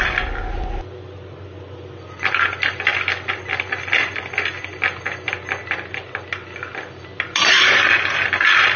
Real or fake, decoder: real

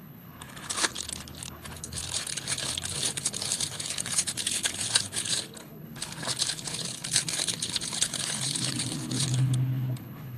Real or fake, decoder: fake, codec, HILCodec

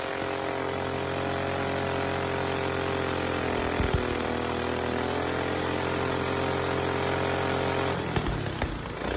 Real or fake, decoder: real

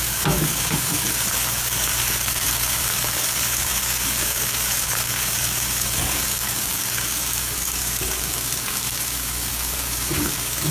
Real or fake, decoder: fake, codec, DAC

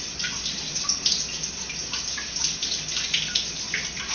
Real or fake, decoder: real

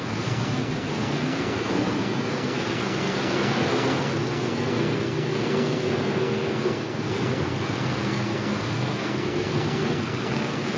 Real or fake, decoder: fake, codec, SNAC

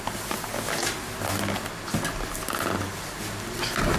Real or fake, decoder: real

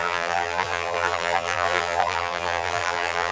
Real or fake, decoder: fake, vocoder, BigVGAN v2